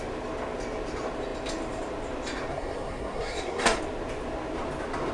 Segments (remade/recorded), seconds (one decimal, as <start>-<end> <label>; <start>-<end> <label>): 0.0-2.5 recorded; 2.5-3.8 remade; 3.8-5.1 recorded